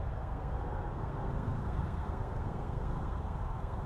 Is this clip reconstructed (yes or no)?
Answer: yes